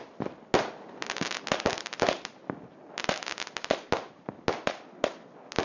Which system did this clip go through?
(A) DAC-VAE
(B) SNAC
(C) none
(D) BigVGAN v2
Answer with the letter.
C